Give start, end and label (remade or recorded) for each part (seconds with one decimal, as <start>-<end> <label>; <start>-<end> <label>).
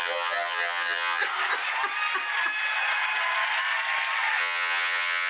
0.0-1.2 remade; 1.2-4.4 recorded; 4.4-5.3 remade